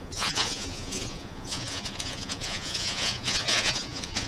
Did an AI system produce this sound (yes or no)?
yes